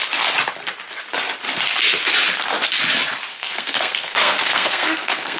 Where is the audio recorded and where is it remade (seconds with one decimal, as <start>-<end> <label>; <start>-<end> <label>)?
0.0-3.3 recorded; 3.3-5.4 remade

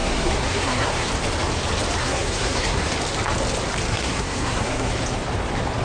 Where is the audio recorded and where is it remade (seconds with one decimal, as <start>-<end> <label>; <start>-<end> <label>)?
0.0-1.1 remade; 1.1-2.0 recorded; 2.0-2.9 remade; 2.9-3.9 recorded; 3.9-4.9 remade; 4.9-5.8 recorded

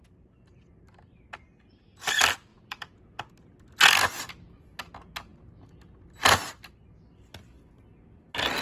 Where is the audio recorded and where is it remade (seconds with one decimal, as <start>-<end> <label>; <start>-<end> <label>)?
0.0-2.5 recorded; 2.5-3.3 remade; 3.3-8.6 recorded

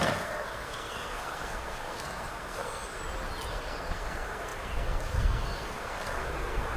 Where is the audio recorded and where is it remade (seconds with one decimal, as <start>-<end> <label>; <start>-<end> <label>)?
0.0-3.0 remade; 3.0-3.5 recorded; 3.5-6.8 remade